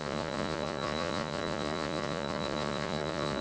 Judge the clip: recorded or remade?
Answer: remade